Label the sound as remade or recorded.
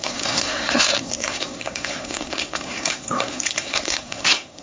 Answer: remade